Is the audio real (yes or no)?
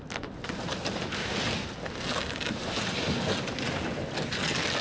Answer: yes